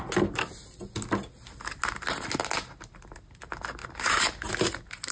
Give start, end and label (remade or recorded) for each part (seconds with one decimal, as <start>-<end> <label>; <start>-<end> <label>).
0.0-5.1 recorded